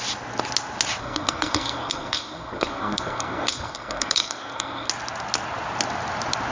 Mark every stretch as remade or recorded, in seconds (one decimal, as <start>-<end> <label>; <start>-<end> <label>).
0.0-1.0 recorded; 1.0-4.9 remade; 4.9-6.5 recorded